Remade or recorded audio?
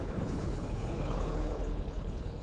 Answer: remade